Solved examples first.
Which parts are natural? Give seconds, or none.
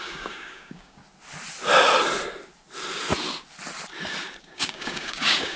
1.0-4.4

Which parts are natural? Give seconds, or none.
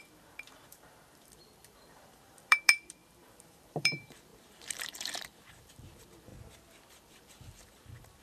6.3-6.9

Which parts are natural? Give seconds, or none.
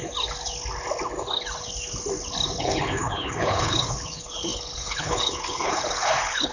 0.0-2.6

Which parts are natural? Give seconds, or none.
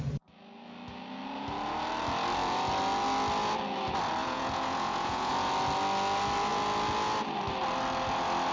0.0-4.2; 5.3-8.5